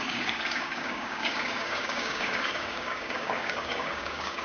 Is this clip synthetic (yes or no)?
yes